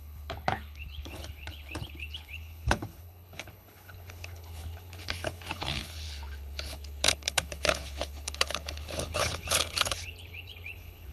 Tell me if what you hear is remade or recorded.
remade